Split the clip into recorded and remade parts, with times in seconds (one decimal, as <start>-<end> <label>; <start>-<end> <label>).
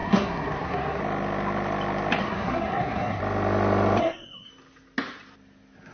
0.0-1.0 remade; 1.0-2.2 recorded; 2.2-3.2 remade; 3.2-4.0 recorded; 4.0-4.5 remade; 4.5-5.9 recorded